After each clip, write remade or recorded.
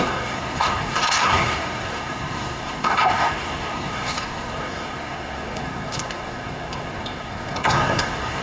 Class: remade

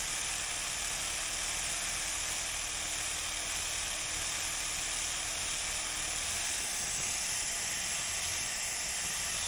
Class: recorded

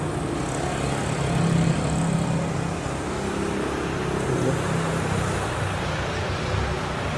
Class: recorded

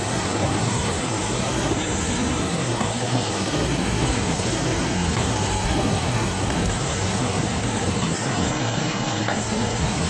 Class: remade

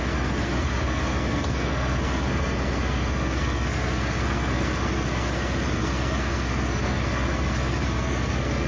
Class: remade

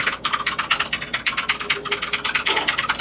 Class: recorded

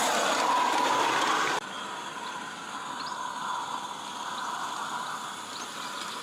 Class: recorded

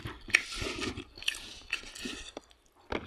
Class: recorded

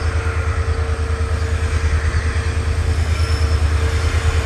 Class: recorded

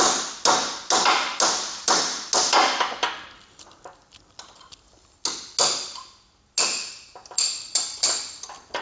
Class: recorded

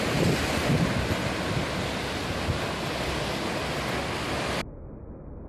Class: recorded